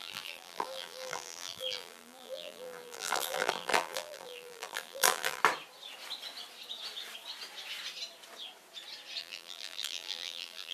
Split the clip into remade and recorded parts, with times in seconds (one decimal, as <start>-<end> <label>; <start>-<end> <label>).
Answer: 0.0-5.4 remade; 5.4-9.2 recorded; 9.2-10.7 remade